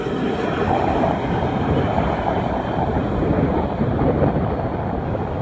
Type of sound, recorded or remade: recorded